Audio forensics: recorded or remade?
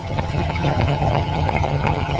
remade